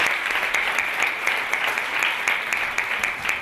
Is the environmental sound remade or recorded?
recorded